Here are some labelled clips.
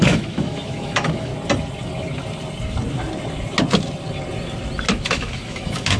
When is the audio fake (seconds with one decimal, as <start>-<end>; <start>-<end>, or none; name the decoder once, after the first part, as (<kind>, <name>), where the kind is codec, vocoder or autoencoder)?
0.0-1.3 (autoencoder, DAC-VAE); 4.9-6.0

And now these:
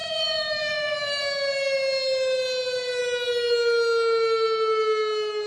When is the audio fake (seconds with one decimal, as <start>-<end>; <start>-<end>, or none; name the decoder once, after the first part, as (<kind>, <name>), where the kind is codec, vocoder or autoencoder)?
0.0-1.2 (autoencoder, DAC-VAE)

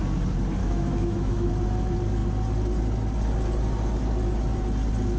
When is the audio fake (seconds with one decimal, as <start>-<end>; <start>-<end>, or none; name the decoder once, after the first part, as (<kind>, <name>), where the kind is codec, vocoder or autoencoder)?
0.6-1.5 (autoencoder, DAC-VAE)

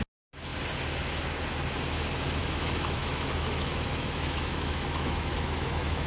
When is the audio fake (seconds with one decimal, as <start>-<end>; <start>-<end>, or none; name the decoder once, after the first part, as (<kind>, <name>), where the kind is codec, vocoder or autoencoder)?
2.4-6.1 (autoencoder, DAC-VAE)

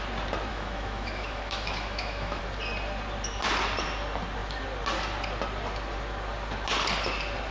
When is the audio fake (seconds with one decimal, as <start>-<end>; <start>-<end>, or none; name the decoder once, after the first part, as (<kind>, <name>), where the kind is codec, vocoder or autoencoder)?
0.5-2.4 (autoencoder, DAC-VAE)

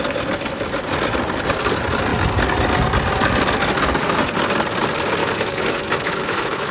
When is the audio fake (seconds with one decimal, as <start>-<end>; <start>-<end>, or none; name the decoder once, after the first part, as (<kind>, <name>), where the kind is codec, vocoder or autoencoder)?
5.2-6.7 (autoencoder, DAC-VAE)

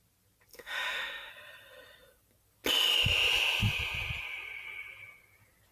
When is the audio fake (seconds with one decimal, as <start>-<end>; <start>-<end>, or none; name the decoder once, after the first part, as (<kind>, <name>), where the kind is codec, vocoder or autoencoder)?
0.5-1.3 (autoencoder, DAC-VAE)

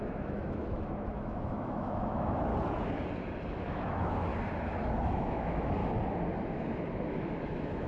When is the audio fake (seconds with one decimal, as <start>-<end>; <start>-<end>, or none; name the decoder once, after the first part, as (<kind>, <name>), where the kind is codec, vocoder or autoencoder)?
0.0-2.5 (autoencoder, DAC-VAE); 3.5-4.3; 5.0-5.8; 7.1-7.9